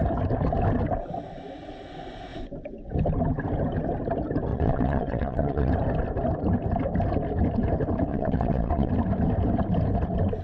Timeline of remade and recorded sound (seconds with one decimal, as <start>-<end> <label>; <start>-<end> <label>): 0.0-4.5 recorded; 4.5-5.7 remade; 5.7-8.1 recorded; 8.1-8.9 remade; 8.9-10.4 recorded